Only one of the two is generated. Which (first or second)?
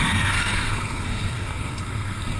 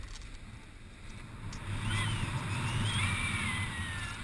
first